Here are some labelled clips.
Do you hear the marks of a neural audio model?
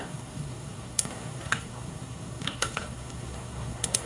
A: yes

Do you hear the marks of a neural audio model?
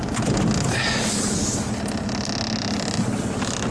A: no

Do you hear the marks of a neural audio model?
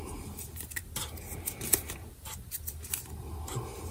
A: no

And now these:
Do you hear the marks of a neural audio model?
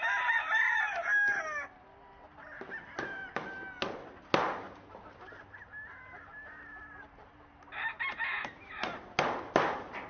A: no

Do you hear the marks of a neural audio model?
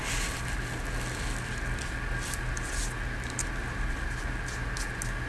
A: no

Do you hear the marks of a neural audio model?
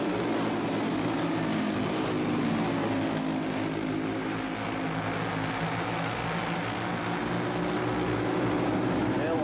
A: no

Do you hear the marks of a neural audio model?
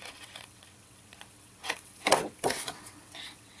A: yes